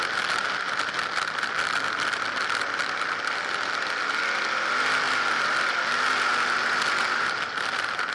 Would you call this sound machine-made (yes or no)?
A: no